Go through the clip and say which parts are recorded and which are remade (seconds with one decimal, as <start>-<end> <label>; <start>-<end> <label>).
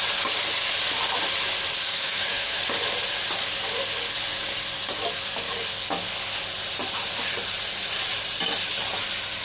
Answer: 0.0-1.9 recorded; 1.9-2.6 remade; 2.6-9.4 recorded